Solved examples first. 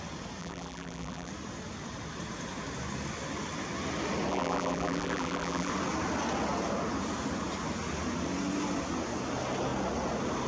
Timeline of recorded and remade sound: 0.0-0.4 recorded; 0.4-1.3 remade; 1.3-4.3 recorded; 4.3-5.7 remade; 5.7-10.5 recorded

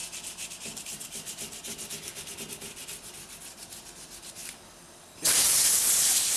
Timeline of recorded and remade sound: 0.0-0.8 recorded; 0.8-6.4 remade

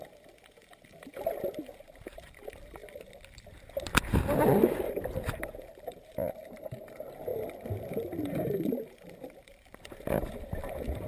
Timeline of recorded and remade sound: 0.0-2.8 remade; 2.8-4.6 recorded; 4.6-7.3 remade; 7.3-7.9 recorded; 7.9-11.1 remade

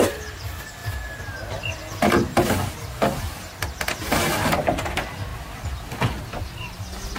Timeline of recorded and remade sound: 0.0-7.2 recorded